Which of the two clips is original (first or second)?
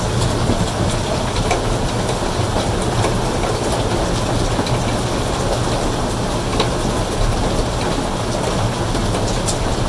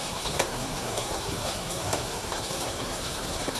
first